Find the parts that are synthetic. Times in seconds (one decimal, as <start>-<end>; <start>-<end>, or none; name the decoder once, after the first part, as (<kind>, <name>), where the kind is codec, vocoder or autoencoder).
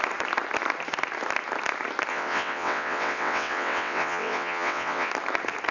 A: 2.1-5.1 (vocoder, WaveNeXt)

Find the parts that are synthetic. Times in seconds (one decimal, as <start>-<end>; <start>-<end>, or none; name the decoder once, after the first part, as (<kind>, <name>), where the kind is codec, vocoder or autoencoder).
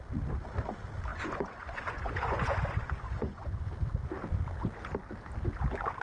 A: 1.1-3.7 (vocoder, Vocos)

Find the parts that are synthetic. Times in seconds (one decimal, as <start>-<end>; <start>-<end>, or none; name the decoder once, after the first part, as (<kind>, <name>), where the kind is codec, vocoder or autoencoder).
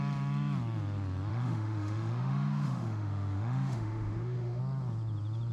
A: 1.3-4.6 (autoencoder, DAC-VAE)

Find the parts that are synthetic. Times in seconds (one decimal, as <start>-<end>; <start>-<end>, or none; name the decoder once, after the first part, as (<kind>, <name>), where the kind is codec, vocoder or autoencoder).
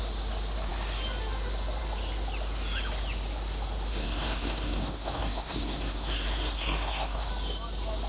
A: 3.9-7.3 (codec, SNAC)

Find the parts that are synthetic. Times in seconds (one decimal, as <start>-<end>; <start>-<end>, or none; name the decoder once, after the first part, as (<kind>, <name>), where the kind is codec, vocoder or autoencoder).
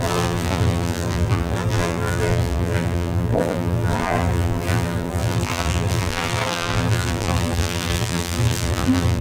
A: 0.0-9.2 (vocoder, BigVGAN v2)